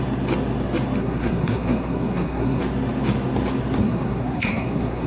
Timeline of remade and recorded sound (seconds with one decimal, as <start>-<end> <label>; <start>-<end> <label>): 0.0-1.0 recorded; 1.0-2.6 remade; 2.6-3.8 recorded; 3.8-5.1 remade